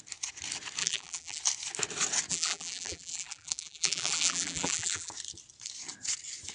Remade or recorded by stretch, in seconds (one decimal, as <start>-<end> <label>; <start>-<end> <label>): 0.0-0.8 recorded; 0.8-1.4 remade; 1.4-2.3 recorded; 2.3-5.1 remade; 5.1-6.5 recorded